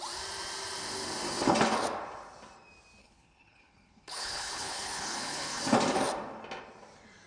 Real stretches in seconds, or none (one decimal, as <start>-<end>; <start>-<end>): 0.0-3.0; 5.6-7.3